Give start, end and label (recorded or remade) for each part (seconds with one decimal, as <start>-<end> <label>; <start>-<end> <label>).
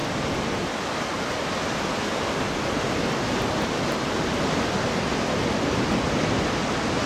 0.0-7.1 recorded